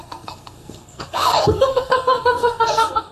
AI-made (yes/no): yes